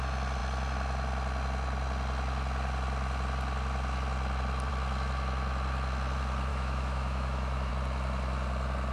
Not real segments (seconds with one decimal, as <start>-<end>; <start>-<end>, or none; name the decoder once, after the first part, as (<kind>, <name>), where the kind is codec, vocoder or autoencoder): 6.5-7.7 (autoencoder, DAC-VAE)